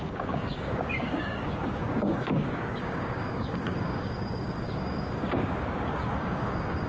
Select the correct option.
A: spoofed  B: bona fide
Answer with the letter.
A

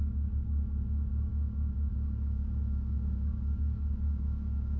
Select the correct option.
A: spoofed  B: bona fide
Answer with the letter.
A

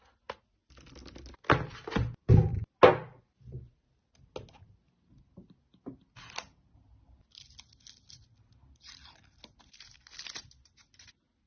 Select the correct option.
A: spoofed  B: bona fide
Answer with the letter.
B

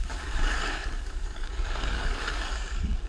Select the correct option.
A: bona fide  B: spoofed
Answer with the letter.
B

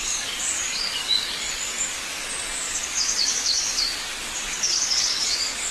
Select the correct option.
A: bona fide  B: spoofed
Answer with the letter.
B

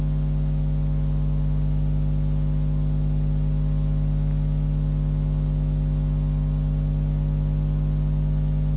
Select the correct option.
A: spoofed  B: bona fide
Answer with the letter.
B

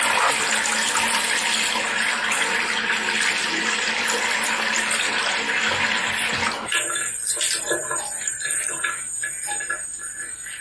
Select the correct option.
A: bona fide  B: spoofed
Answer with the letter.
A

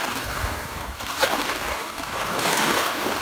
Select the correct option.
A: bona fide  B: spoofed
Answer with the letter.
B